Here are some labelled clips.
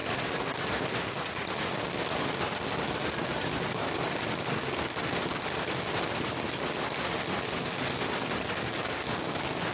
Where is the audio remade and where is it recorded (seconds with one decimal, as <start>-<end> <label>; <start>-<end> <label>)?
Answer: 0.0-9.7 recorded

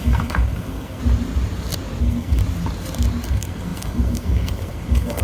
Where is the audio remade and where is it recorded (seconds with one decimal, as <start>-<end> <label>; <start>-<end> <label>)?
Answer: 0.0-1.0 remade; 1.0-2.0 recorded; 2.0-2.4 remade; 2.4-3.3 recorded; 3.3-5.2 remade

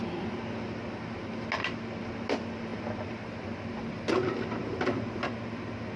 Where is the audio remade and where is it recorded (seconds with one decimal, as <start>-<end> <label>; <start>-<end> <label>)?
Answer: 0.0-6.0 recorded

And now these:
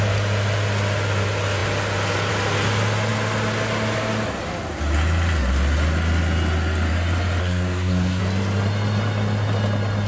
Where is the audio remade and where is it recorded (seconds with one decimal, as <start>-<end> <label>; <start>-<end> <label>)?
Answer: 0.0-7.4 recorded; 7.4-8.2 remade; 8.2-10.1 recorded

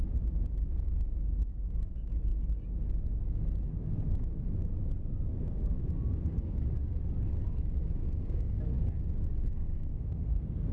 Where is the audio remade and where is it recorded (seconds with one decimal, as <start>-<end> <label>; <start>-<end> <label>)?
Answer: 0.0-5.3 recorded; 5.3-5.8 remade; 5.8-8.0 recorded; 8.0-8.6 remade; 8.6-9.7 recorded; 9.7-10.7 remade

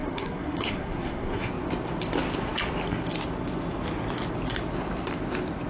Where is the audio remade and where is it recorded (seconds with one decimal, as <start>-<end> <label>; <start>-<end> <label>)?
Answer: 0.0-1.5 remade; 1.5-5.7 recorded

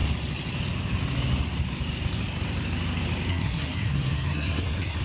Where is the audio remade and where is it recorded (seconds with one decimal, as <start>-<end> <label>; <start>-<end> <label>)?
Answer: 0.0-3.3 recorded; 3.3-5.0 remade

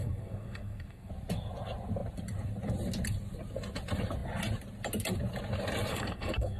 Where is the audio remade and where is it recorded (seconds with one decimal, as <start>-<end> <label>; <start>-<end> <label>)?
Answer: 0.0-1.1 remade; 1.1-5.9 recorded; 5.9-6.6 remade